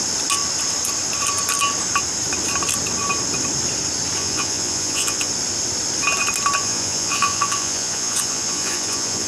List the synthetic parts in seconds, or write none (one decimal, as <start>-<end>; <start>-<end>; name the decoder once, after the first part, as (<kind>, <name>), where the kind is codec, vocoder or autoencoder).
4.2-5.3 (vocoder, Vocos); 6.6-9.3